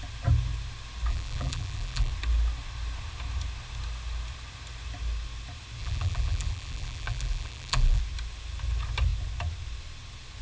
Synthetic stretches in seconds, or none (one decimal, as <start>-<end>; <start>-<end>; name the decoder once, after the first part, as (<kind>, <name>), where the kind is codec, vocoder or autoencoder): 1.1-2.1 (vocoder, BigVGAN v2); 5.8-8.0